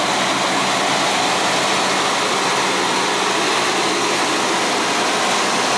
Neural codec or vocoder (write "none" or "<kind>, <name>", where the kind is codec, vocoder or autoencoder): none